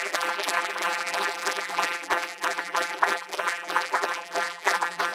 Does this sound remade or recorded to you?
remade